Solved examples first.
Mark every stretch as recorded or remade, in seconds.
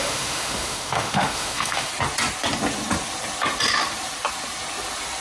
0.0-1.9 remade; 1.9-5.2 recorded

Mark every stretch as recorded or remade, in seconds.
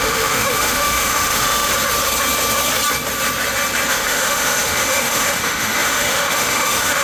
0.0-1.7 remade; 1.7-3.9 recorded; 3.9-7.0 remade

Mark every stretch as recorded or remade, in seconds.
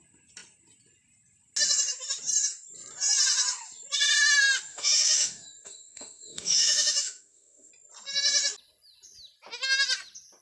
0.0-4.7 recorded; 4.7-7.7 remade; 7.7-10.4 recorded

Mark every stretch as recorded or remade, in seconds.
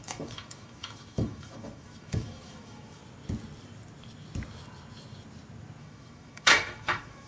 0.0-3.0 remade; 3.0-5.8 recorded; 5.8-7.3 remade